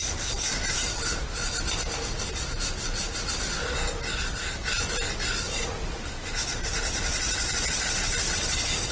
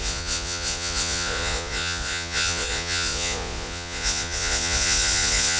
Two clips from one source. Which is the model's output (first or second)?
second